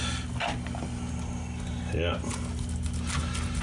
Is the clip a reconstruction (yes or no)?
no